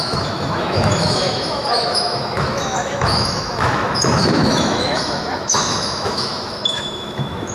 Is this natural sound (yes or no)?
no